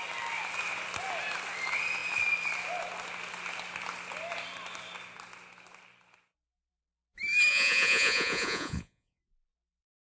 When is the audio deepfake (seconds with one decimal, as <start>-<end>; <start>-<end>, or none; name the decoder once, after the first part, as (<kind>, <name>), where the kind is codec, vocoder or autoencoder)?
7.5-9.2 (vocoder, Vocos)